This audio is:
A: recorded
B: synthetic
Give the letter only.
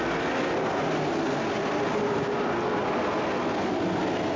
A